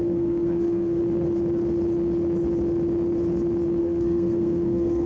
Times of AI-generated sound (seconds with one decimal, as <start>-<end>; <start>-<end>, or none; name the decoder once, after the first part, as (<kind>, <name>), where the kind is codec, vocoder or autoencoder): 0.0-1.0 (codec, SNAC); 3.8-5.1